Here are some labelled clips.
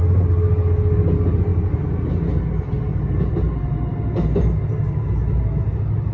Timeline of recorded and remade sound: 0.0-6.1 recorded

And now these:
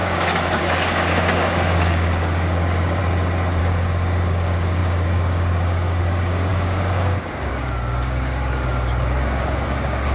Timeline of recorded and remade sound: 0.0-3.0 remade; 3.0-3.6 recorded; 3.6-10.1 remade